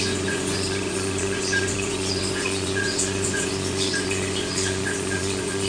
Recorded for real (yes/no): no